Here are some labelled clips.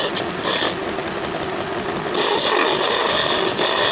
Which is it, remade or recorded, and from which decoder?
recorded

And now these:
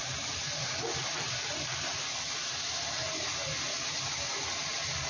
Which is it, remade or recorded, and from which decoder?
recorded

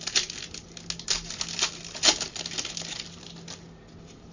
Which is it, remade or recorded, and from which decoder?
recorded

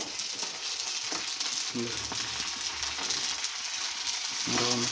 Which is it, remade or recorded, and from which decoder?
recorded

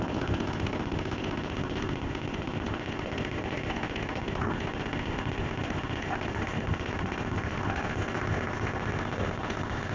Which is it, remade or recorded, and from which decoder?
remade, codec, ZipCodec